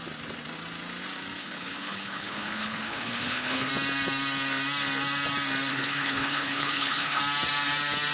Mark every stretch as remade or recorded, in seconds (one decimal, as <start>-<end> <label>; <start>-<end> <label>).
0.0-1.4 recorded; 1.4-3.7 remade; 3.7-5.7 recorded; 5.7-7.2 remade; 7.2-8.1 recorded